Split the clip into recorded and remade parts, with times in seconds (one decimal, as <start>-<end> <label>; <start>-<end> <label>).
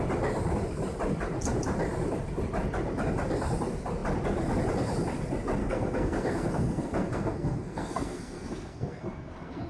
0.0-5.6 recorded; 5.6-9.7 remade